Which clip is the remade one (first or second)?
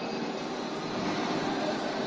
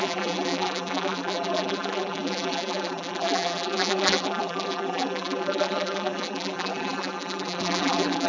second